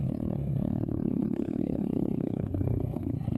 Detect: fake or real fake